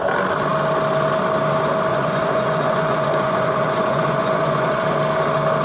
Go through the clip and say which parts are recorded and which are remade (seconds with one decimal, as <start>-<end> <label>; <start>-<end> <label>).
0.0-1.9 recorded; 1.9-4.8 remade; 4.8-5.6 recorded